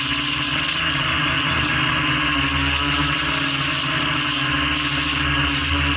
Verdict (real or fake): real